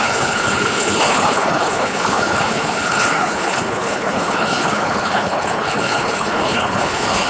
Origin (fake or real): fake